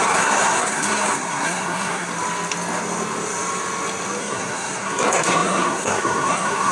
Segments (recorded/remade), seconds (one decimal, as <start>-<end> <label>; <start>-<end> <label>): 0.0-2.1 remade; 2.1-4.2 recorded; 4.2-6.7 remade